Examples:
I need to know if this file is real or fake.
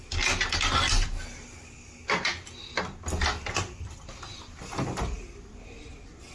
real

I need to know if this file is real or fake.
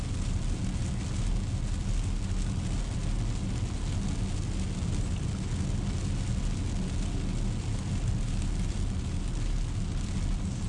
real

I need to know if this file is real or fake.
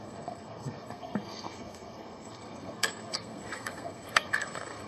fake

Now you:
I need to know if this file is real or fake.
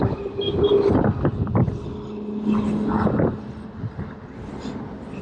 real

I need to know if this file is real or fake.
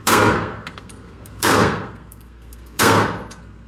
fake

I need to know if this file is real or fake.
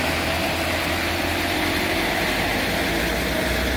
real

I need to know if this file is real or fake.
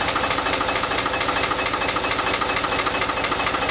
real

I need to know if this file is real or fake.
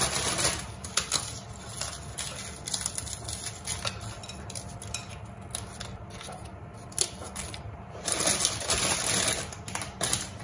real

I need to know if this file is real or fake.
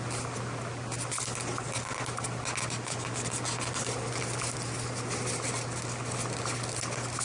real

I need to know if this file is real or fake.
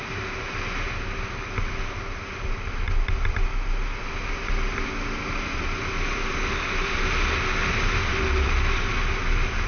real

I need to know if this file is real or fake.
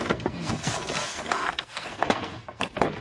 fake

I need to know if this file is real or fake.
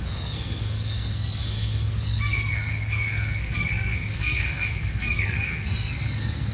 fake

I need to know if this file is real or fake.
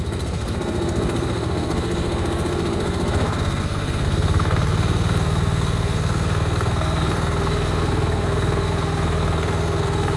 fake